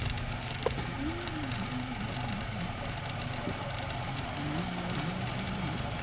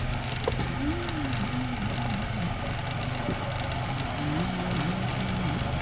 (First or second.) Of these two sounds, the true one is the second